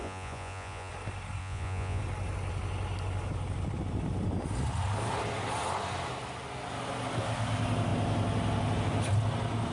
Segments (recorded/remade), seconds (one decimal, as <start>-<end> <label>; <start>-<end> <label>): 0.0-0.9 remade; 0.9-1.4 recorded; 1.4-2.0 remade; 2.0-9.7 recorded